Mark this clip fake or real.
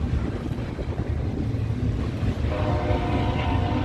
real